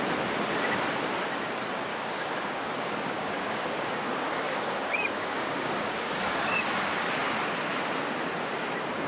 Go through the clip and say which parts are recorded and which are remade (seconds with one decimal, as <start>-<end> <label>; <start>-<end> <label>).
0.0-1.9 recorded; 1.9-6.6 remade; 6.6-9.1 recorded